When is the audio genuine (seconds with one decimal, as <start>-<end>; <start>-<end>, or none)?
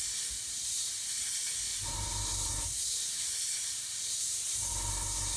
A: 0.0-0.4; 1.2-1.7; 4.7-5.4